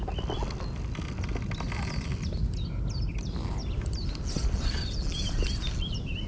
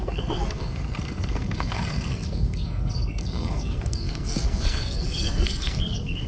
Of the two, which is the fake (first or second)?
second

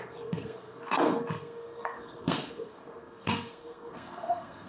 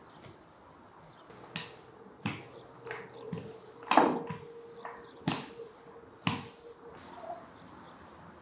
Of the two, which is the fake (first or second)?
first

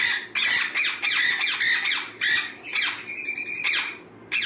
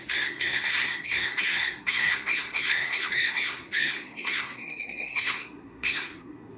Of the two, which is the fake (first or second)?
second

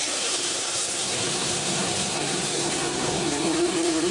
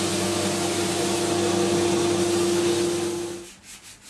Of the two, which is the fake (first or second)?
first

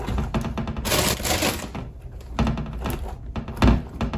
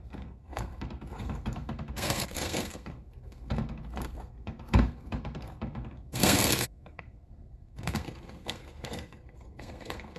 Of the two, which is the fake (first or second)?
second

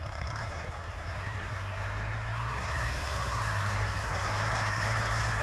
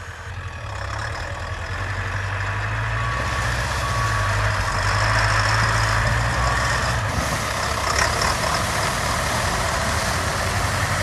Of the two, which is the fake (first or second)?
first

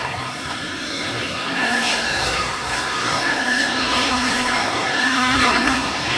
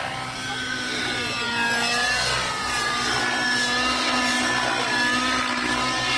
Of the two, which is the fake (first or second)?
first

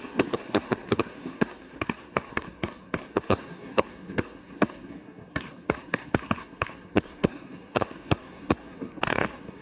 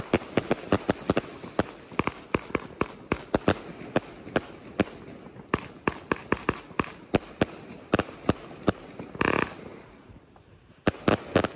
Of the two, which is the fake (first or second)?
first